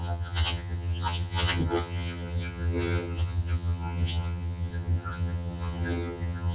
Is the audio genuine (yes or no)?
no